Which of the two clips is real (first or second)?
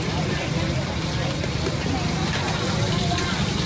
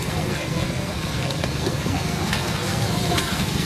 first